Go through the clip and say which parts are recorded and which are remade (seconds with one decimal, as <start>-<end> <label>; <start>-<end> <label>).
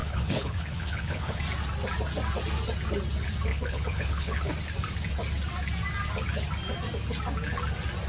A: 0.0-1.4 remade; 1.4-3.5 recorded; 3.5-4.5 remade; 4.5-8.1 recorded